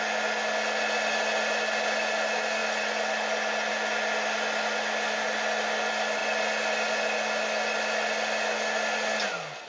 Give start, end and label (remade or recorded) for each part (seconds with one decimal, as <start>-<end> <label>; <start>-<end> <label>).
0.0-9.7 recorded